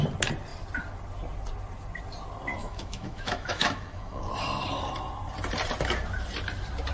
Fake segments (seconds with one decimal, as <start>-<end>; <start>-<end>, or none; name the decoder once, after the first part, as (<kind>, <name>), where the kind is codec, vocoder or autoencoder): 2.6-4.3 (autoencoder, DAC-VAE)